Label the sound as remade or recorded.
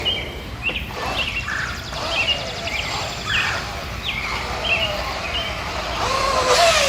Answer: recorded